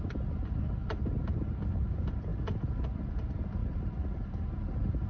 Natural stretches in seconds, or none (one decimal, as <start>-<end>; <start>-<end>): 0.0-3.6; 4.5-5.1